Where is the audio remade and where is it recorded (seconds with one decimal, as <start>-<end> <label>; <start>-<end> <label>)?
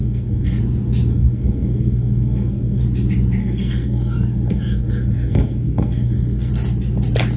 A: 0.0-0.6 remade; 0.6-1.1 recorded; 1.1-2.8 remade; 2.8-3.4 recorded; 3.4-6.5 remade; 6.5-7.4 recorded